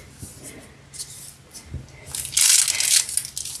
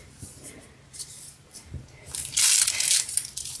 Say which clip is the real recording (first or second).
first